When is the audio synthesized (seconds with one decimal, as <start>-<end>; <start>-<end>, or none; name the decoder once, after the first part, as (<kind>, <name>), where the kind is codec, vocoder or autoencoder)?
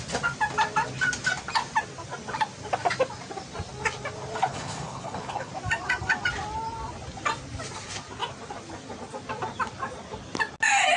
4.5-5.5 (codec, HILCodec)